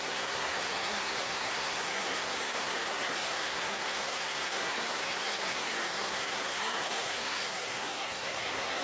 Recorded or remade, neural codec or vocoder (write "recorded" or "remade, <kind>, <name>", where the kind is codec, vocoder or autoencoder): remade, codec, SNAC